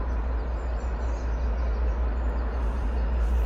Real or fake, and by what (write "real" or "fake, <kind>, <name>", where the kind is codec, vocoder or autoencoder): real